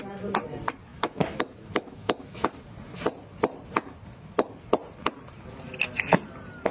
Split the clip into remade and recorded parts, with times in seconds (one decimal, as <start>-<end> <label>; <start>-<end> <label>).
0.0-0.9 recorded; 0.9-2.5 remade; 2.5-6.7 recorded